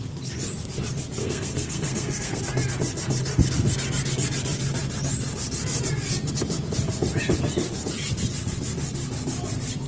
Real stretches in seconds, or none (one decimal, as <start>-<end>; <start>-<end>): 0.0-1.2; 2.4-9.9